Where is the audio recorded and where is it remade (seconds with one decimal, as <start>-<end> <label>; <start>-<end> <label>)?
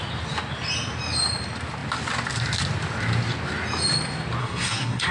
0.0-4.4 recorded; 4.4-5.1 remade